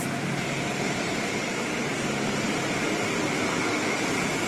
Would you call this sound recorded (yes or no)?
yes